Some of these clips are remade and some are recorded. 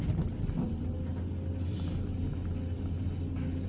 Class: recorded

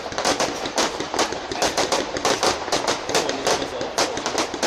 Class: recorded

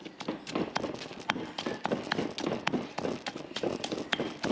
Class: recorded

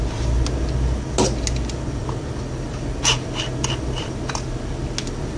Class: recorded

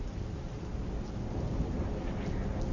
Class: recorded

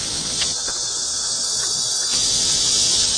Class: remade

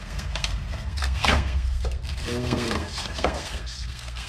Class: remade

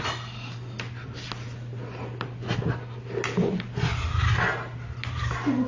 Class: recorded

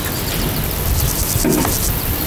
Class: recorded